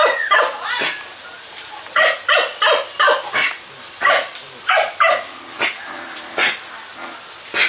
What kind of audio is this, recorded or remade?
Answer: recorded